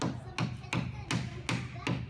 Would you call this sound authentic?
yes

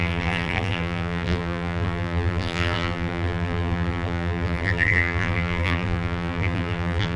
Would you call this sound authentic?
no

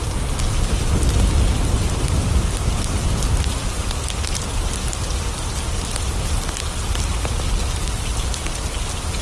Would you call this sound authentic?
yes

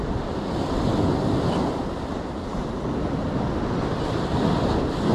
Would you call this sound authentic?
yes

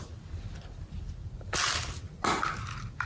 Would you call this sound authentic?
yes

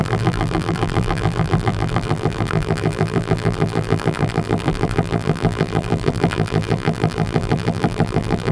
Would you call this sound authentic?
no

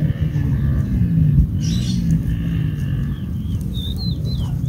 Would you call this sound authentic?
yes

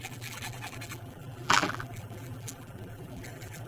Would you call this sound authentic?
no